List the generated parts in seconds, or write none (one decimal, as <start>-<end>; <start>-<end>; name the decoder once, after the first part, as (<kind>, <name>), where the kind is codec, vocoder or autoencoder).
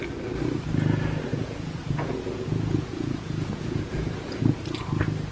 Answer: 1.3-4.4 (vocoder, Vocos)